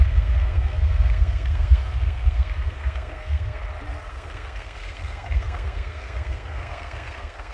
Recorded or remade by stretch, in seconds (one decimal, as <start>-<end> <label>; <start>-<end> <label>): 0.0-3.6 remade; 3.6-4.1 recorded; 4.1-7.5 remade